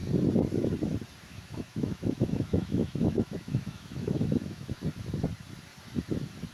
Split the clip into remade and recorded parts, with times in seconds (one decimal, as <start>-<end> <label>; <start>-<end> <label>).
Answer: 0.0-1.2 recorded; 1.2-4.8 remade; 4.8-6.5 recorded